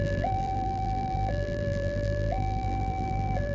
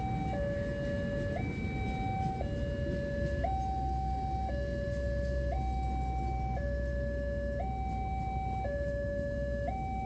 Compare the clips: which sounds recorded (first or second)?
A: second